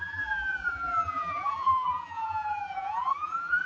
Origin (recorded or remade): remade